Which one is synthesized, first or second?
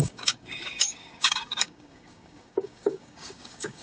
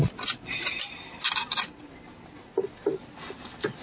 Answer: first